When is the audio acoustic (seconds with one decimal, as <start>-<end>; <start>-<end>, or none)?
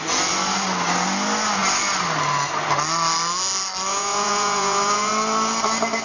0.0-3.9; 5.1-6.0